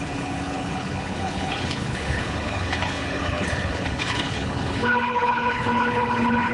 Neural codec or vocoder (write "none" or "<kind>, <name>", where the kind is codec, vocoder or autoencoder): codec, HILCodec